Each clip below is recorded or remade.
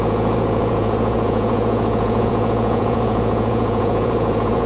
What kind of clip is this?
remade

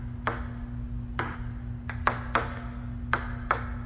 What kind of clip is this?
recorded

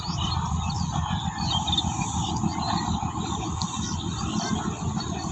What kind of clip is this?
recorded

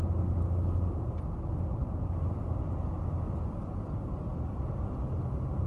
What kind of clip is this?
recorded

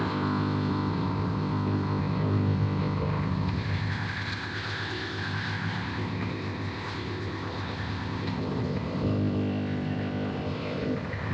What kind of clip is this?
remade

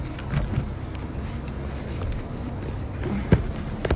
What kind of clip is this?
recorded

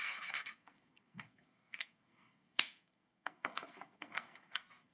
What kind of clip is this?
remade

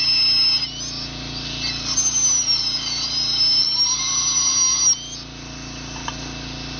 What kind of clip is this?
recorded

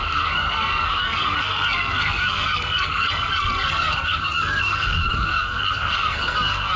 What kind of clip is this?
remade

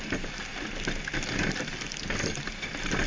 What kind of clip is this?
recorded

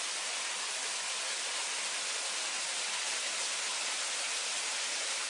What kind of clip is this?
recorded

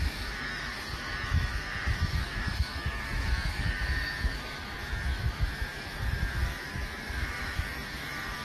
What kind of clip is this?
remade